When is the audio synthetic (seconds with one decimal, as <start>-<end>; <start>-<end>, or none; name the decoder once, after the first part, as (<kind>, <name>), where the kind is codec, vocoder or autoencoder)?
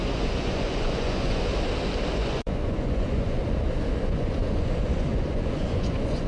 0.0-1.5 (vocoder, Vocos); 2.1-3.4; 4.0-6.3